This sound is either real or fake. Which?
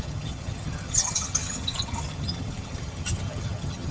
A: fake